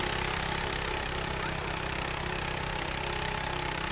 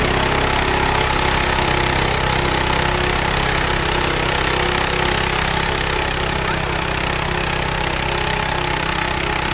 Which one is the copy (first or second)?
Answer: first